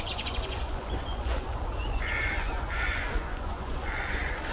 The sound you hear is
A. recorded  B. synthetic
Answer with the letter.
B